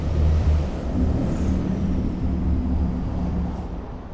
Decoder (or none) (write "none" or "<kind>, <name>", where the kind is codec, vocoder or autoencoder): vocoder, BigVGAN v2